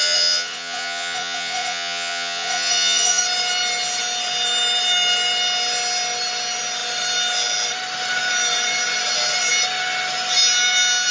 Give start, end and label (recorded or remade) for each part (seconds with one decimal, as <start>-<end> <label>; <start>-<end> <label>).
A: 0.0-3.2 remade; 3.2-11.1 recorded